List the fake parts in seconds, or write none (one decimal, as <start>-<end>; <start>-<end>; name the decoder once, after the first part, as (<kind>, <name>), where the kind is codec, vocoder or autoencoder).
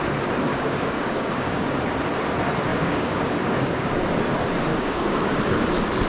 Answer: 0.5-1.8 (codec, DAC); 2.7-3.9; 4.7-5.4